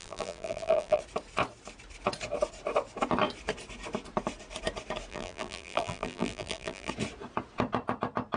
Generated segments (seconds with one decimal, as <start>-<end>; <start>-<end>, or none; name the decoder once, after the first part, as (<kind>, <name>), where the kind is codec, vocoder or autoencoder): 0.0-1.0 (vocoder, BigVGAN v2); 5.1-6.9